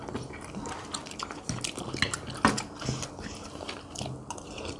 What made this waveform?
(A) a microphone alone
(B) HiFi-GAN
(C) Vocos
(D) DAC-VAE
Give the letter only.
A